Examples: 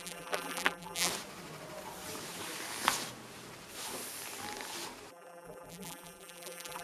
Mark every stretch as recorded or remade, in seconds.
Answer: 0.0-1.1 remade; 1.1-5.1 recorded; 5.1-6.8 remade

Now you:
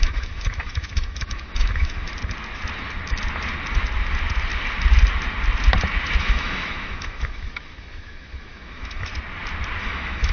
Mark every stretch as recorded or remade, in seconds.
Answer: 0.0-2.1 remade; 2.1-6.2 recorded; 6.2-9.1 remade; 9.1-9.8 recorded; 9.8-10.3 remade

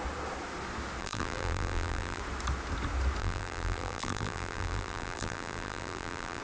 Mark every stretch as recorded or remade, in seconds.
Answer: 0.0-1.0 recorded; 1.0-2.2 remade; 2.2-3.2 recorded; 3.2-6.4 remade

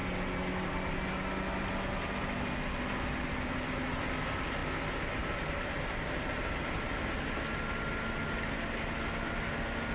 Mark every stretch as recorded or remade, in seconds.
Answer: 0.0-9.9 recorded

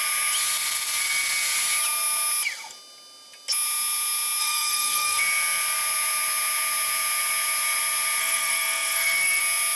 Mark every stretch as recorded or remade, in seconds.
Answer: 0.0-4.4 recorded; 4.4-5.2 remade; 5.2-8.2 recorded; 8.2-9.4 remade; 9.4-9.8 recorded

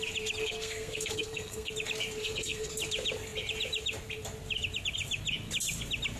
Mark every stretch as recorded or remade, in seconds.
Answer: 0.0-0.4 recorded; 0.4-1.7 remade; 1.7-2.2 recorded; 2.2-2.7 remade; 2.7-6.2 recorded

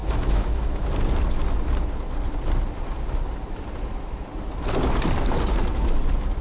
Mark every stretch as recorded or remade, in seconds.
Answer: 0.0-0.9 remade; 0.9-6.4 recorded